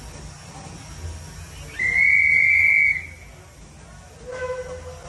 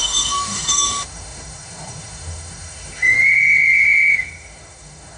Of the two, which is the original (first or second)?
first